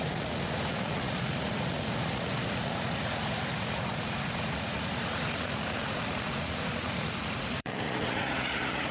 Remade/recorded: remade